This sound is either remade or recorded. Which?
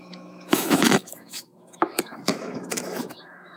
remade